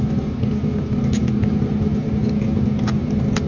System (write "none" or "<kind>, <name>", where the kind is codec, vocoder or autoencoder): none